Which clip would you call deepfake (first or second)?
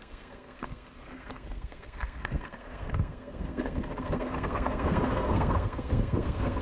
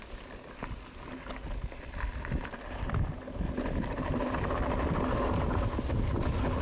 first